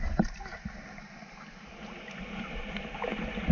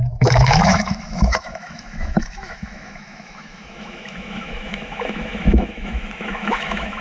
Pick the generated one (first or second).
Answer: second